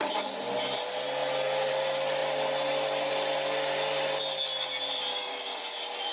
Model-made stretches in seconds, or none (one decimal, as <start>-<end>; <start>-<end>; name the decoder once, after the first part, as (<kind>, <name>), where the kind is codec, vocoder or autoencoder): 5.1-5.6 (codec, DAC)